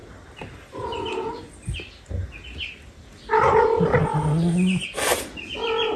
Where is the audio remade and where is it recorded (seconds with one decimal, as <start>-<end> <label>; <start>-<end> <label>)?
0.0-6.0 recorded

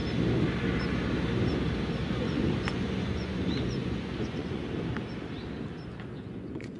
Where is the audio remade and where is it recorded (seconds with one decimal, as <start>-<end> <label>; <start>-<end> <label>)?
0.0-2.1 recorded; 2.1-4.6 remade; 4.6-6.0 recorded; 6.0-6.8 remade

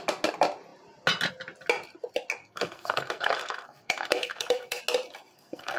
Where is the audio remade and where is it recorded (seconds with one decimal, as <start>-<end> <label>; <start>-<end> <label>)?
0.0-2.4 recorded; 2.4-4.8 remade; 4.8-5.3 recorded; 5.3-5.8 remade

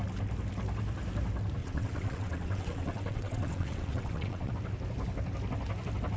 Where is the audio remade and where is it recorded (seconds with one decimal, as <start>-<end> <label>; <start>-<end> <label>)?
0.0-1.6 recorded; 1.6-4.5 remade; 4.5-6.2 recorded